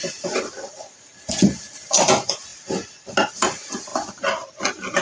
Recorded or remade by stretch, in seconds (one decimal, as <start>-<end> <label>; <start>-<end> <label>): 0.0-2.5 remade; 2.5-3.3 recorded; 3.3-3.9 remade; 3.9-4.6 recorded; 4.6-5.0 remade